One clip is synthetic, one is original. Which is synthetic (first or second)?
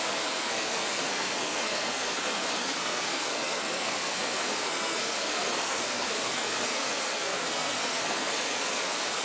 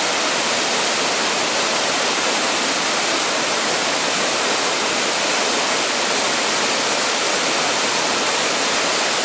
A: first